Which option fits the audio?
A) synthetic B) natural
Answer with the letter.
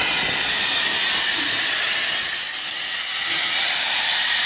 B